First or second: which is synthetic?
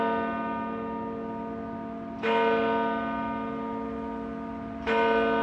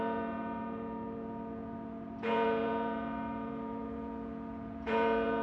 second